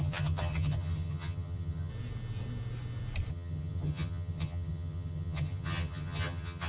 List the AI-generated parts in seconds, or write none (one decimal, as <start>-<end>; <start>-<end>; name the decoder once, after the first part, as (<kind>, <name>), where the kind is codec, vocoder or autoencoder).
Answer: 0.0-1.9 (vocoder, HiFi-GAN); 3.3-6.7